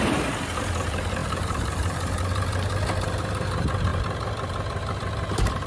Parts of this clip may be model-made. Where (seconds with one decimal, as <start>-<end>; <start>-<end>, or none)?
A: 0.0-5.7